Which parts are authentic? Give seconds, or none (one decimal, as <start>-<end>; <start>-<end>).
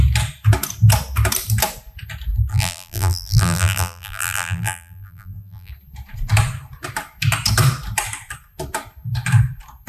0.0-2.5; 5.7-9.9